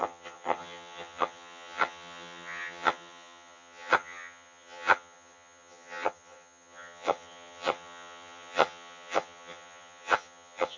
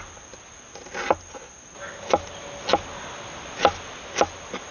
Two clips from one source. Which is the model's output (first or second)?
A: first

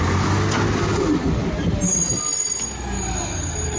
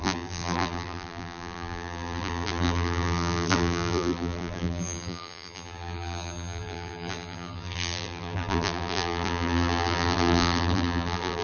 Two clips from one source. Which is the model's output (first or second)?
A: second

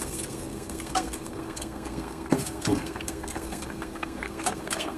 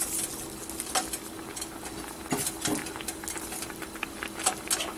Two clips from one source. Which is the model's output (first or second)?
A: first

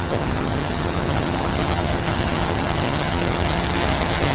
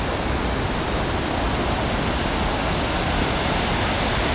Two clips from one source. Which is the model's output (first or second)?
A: first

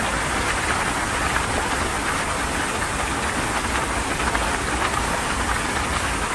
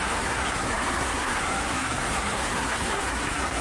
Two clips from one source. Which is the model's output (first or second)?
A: second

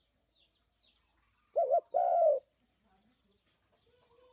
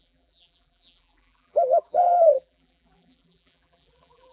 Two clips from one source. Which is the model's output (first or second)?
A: second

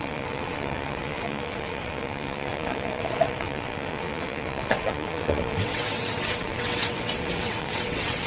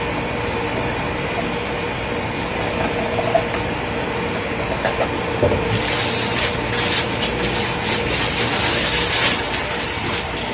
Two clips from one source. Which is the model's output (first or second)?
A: first